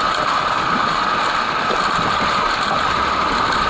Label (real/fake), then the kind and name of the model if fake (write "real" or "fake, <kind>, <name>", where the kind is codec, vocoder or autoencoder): real